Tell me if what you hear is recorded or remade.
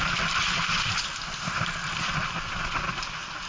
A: recorded